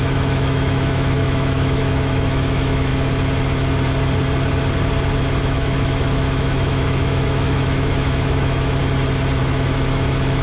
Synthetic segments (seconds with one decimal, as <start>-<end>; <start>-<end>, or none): 0.0-2.9; 5.4-8.8; 9.4-10.4